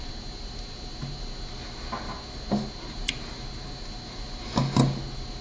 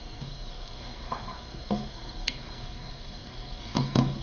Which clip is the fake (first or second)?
second